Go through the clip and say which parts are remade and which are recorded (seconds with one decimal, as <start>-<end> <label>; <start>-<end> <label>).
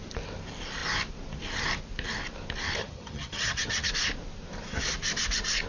0.0-2.8 recorded; 2.8-3.9 remade; 3.9-5.7 recorded